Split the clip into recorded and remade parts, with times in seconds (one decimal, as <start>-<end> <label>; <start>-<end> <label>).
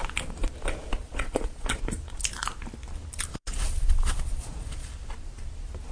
0.0-1.0 recorded; 1.0-1.8 remade; 1.8-3.3 recorded; 3.3-4.9 remade; 4.9-5.9 recorded